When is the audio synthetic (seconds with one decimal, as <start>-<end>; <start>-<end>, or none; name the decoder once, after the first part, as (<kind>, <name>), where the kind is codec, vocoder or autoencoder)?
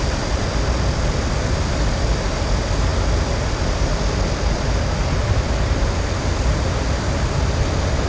none